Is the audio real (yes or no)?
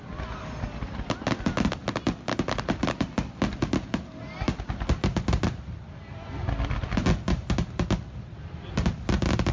yes